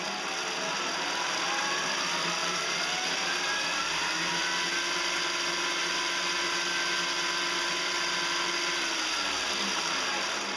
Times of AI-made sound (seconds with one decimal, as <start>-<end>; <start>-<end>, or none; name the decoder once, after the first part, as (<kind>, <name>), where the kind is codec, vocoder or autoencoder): none